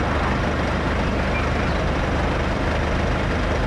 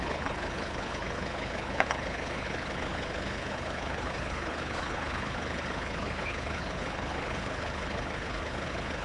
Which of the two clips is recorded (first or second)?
first